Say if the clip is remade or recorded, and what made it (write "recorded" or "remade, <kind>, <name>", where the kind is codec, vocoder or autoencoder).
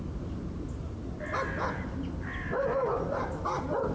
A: recorded